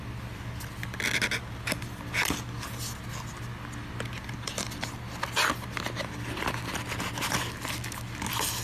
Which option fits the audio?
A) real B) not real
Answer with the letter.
A